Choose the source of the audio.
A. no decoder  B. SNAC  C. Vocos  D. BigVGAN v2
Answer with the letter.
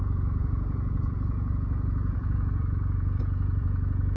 C